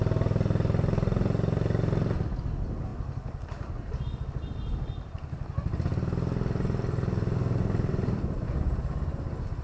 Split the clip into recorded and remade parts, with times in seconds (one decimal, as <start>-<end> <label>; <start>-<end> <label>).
0.0-9.6 recorded